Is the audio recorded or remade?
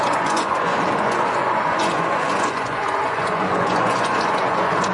remade